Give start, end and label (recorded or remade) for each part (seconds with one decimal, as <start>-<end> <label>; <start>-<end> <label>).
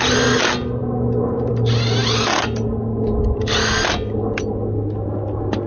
0.0-5.7 recorded